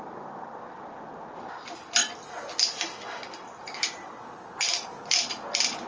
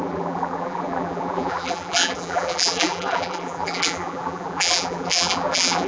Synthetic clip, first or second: second